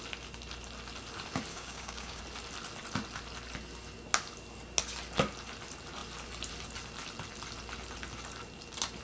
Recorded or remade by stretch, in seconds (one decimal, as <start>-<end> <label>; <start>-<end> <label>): 0.0-1.5 recorded; 1.5-2.2 remade; 2.2-9.0 recorded